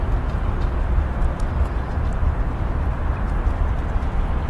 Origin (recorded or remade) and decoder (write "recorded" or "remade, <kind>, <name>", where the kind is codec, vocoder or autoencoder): remade, vocoder, BigVGAN v2